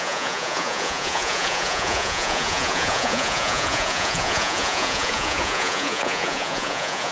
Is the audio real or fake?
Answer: fake